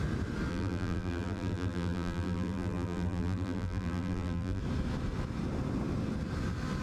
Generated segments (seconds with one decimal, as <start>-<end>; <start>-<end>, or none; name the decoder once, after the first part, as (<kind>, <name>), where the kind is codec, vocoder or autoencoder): 0.5-4.6 (vocoder, BigVGAN v2)